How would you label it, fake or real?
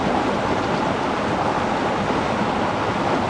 real